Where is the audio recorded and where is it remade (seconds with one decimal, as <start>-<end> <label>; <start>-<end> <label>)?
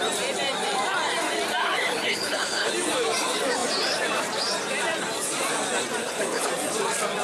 0.0-1.6 recorded; 1.6-2.7 remade; 2.7-6.0 recorded; 6.0-6.5 remade; 6.5-7.2 recorded